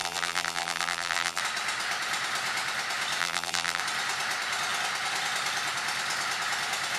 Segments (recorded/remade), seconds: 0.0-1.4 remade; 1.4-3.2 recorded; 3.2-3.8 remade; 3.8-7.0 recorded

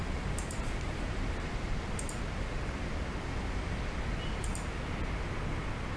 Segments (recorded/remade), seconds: 0.0-1.5 remade; 1.5-6.0 recorded

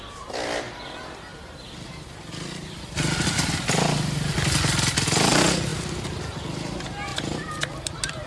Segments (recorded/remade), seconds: 0.0-1.3 recorded; 1.3-3.6 remade; 3.6-5.7 recorded; 5.7-6.2 remade; 6.2-7.1 recorded; 7.1-7.8 remade; 7.8-8.3 recorded

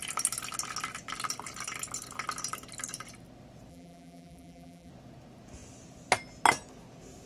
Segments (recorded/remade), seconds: 0.0-3.7 recorded; 3.7-4.9 remade; 4.9-7.3 recorded

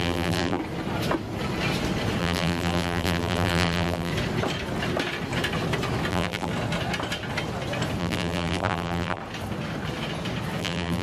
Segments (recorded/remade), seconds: 0.0-0.6 remade; 0.6-2.2 recorded; 2.2-4.1 remade; 4.1-6.1 recorded; 6.1-6.5 remade; 6.5-8.0 recorded; 8.0-9.2 remade; 9.2-10.6 recorded; 10.6-11.0 remade

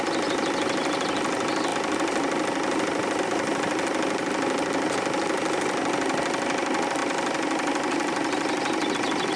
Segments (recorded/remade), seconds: 0.0-9.4 recorded

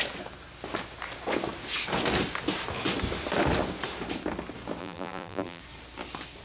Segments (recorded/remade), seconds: 0.0-4.8 recorded; 4.8-5.6 remade; 5.6-6.4 recorded

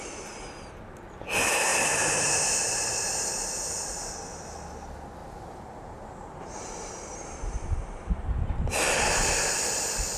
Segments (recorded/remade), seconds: 0.0-1.7 recorded; 1.7-2.9 remade; 2.9-5.2 recorded; 5.2-6.9 remade; 6.9-10.2 recorded